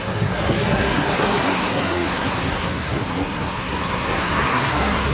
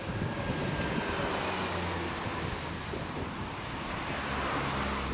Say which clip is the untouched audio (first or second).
second